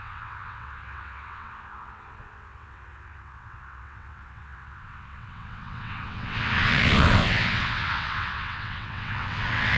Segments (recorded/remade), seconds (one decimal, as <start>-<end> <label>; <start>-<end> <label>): 0.0-9.8 remade